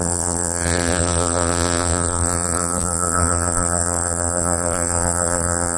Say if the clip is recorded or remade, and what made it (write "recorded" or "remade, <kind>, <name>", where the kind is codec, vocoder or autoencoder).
remade, vocoder, BigVGAN v2